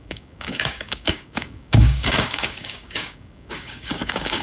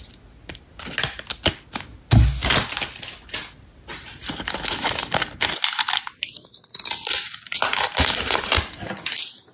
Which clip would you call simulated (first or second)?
first